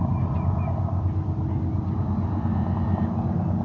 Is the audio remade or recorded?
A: recorded